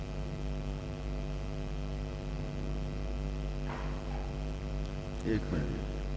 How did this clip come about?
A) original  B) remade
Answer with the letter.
B